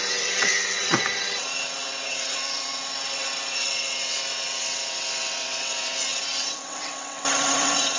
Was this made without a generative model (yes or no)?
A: no